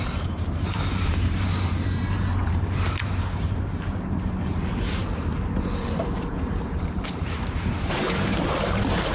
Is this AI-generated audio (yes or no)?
yes